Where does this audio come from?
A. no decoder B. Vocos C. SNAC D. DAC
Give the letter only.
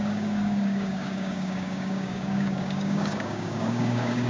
D